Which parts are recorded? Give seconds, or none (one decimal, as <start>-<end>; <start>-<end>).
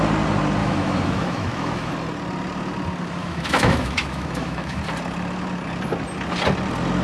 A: 0.0-0.6; 1.9-3.2; 4.8-7.0